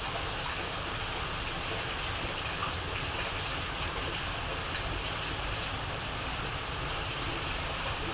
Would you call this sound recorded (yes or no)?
yes